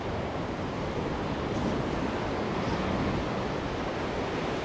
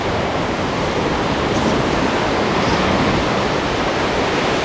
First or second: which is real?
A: first